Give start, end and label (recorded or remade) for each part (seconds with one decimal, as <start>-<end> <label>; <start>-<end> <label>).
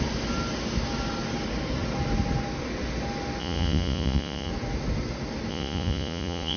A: 0.0-3.4 recorded; 3.4-4.5 remade; 4.5-5.5 recorded; 5.5-6.6 remade